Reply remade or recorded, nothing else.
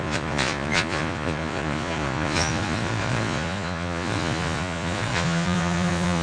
remade